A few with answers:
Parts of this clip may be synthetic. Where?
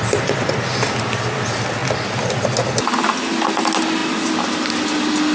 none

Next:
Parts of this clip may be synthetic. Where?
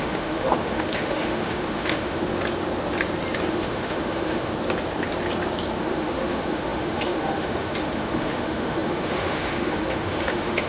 0.0-2.2 (autoencoder, DAC-VAE); 3.5-4.5; 5.8-10.7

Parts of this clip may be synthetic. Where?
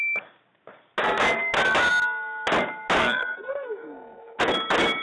3.0-4.4 (codec, SNAC)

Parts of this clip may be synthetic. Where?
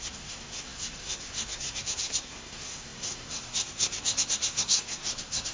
0.0-5.5 (codec, SNAC)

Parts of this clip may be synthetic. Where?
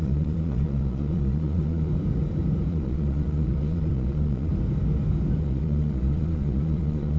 0.0-1.9 (vocoder, Vocos); 2.7-4.5; 5.4-7.2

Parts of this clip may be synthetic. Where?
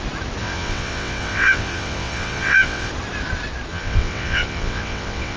0.4-2.9 (vocoder, WaveNeXt); 3.7-5.4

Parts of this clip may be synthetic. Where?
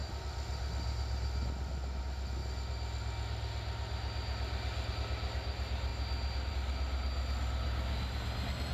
none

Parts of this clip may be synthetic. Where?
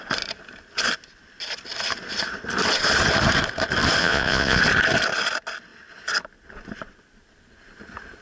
4.0-4.6 (vocoder, Vocos)